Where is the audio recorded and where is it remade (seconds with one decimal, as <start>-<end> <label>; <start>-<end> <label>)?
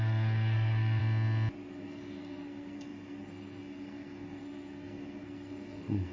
0.0-1.0 remade; 1.0-1.7 recorded; 1.7-6.1 remade